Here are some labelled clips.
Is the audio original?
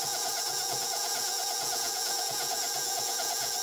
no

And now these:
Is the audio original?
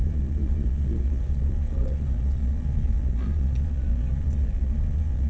no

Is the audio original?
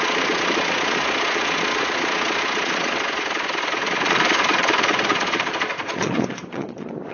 no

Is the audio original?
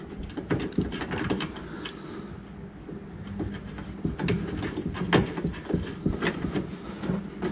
yes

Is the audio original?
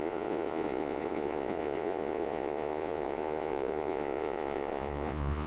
no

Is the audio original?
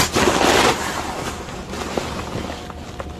yes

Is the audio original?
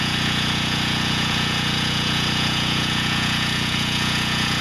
no